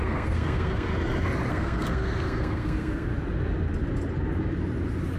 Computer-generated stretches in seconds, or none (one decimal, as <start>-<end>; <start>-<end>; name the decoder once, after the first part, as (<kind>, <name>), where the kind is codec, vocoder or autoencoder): 0.0-0.9 (codec, SNAC); 1.5-3.1

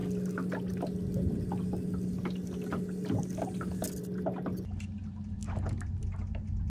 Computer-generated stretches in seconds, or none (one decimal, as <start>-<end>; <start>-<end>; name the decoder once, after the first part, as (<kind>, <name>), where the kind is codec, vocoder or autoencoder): none

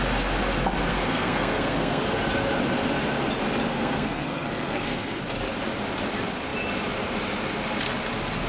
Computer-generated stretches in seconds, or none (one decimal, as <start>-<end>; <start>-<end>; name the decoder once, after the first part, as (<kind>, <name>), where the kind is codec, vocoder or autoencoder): 0.9-2.0 (codec, SNAC); 3.7-5.2